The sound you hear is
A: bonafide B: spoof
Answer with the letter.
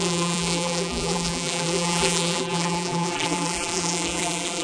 B